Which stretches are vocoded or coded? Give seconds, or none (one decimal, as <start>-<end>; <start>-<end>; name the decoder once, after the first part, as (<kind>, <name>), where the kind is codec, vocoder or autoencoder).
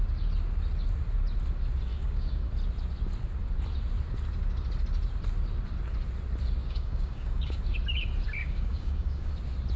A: 1.9-2.5 (codec, DAC); 6.6-7.6; 8.4-9.3